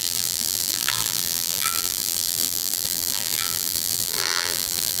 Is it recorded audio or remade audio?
remade